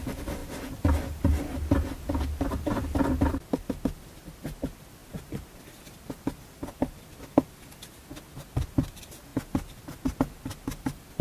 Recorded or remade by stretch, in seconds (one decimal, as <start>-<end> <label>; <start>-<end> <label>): 0.0-9.3 remade; 9.3-10.3 recorded; 10.3-11.2 remade